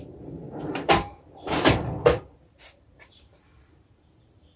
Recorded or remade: remade